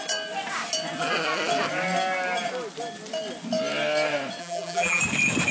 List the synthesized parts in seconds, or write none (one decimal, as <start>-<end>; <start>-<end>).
4.4-5.0